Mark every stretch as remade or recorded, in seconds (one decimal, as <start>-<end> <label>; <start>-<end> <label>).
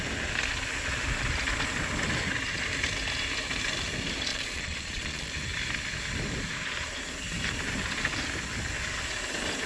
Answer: 0.0-4.3 recorded; 4.3-5.3 remade; 5.3-9.7 recorded